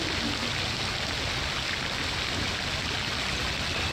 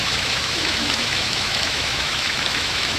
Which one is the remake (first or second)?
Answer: second